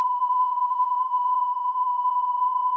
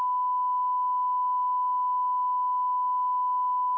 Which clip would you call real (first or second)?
second